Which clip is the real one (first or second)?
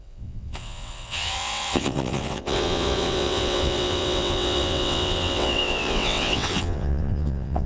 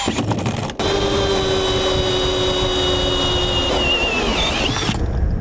second